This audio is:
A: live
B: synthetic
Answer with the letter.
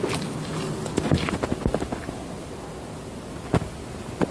A